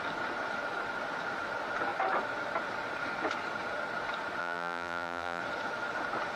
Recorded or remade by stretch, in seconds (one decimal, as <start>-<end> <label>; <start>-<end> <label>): 0.0-4.4 recorded; 4.4-5.4 remade; 5.4-6.4 recorded